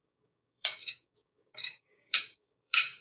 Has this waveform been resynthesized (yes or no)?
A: yes